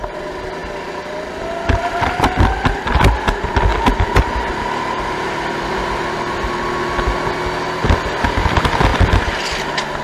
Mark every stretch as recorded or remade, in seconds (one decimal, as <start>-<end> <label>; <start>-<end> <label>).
0.0-10.0 recorded